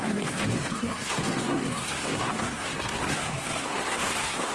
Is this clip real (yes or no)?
no